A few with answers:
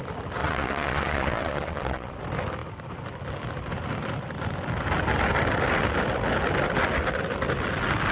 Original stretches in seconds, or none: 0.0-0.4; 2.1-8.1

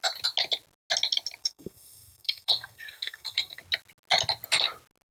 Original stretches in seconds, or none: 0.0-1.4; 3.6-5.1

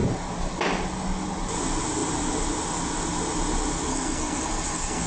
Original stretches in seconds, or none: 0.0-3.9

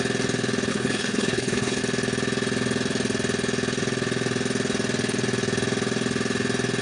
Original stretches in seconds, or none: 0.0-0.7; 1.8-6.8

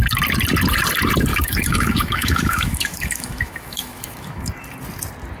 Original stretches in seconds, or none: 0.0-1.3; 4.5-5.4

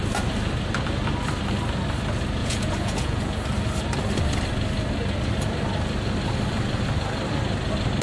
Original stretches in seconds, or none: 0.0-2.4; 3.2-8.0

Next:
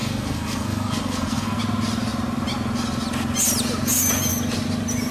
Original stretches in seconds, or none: 1.6-5.1

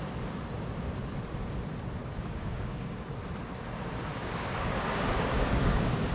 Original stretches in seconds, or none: 0.0-2.0; 3.1-4.2